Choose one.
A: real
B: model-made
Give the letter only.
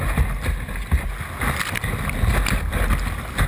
A